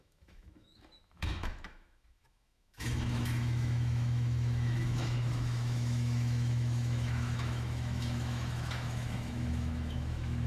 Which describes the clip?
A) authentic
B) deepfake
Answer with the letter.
B